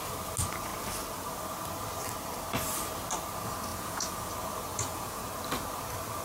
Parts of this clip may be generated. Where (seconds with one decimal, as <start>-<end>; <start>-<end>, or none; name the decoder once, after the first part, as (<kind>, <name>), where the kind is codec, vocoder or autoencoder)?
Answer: 3.7-4.3 (vocoder, Vocos); 4.7-5.2